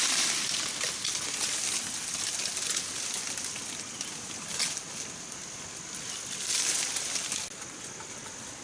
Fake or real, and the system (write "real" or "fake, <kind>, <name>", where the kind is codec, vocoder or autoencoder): real